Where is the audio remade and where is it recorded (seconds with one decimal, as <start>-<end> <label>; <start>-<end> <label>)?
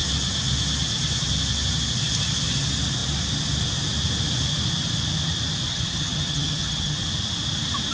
0.0-5.7 recorded; 5.7-7.0 remade; 7.0-7.9 recorded